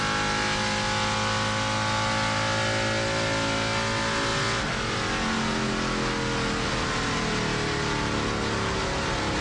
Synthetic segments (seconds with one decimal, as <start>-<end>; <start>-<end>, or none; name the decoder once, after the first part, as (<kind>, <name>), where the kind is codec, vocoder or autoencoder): none